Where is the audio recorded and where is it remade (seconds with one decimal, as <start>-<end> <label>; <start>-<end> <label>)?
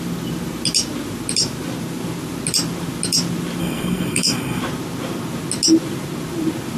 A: 0.0-3.6 recorded; 3.6-4.6 remade; 4.6-6.8 recorded